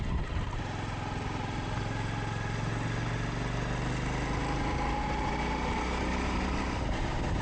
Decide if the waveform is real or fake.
real